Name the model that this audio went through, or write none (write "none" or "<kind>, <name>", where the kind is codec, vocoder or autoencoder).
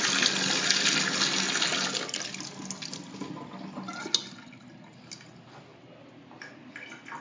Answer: none